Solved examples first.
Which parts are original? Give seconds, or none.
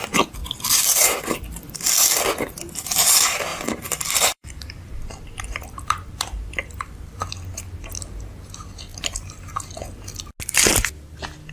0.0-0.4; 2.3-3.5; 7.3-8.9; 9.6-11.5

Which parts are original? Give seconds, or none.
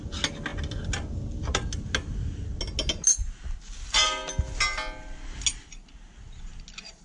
0.0-7.0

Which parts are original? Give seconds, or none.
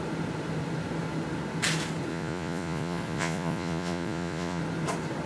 0.0-2.1; 4.6-5.3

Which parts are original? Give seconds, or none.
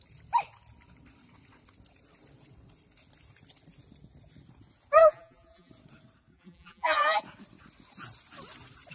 0.0-5.0; 5.7-6.3; 7.2-8.9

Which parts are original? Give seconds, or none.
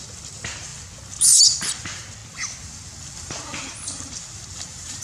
0.0-5.0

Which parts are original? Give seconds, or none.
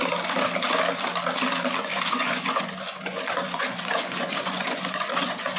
0.0-1.9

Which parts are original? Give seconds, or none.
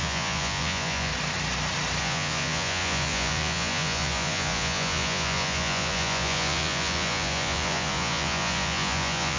1.1-2.0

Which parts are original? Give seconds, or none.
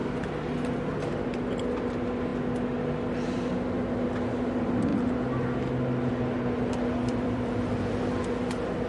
0.0-7.0; 8.0-8.9